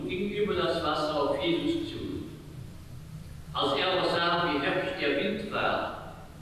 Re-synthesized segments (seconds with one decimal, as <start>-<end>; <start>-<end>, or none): none